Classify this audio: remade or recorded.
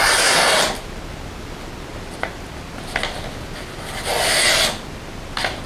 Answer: recorded